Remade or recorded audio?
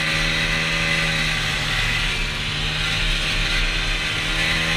recorded